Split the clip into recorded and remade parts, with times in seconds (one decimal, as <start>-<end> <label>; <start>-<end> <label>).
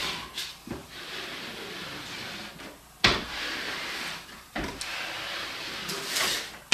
0.0-6.7 recorded